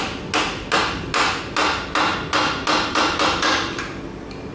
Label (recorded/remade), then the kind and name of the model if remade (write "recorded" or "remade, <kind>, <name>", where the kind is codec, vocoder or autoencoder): recorded